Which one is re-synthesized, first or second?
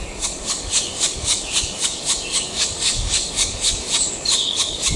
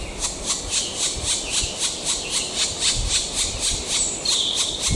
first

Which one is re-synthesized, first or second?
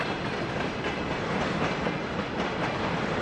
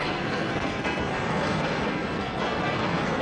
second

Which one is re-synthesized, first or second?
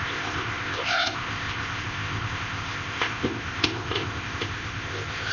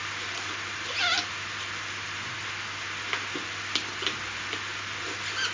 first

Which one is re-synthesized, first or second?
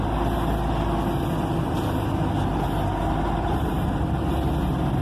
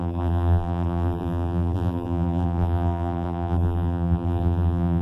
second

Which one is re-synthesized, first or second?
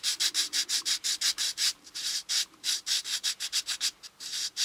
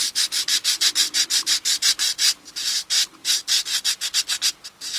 first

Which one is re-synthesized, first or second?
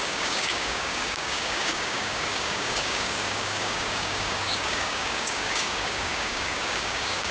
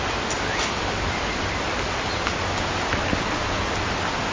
first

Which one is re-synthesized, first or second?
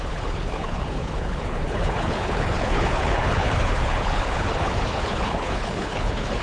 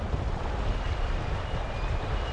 first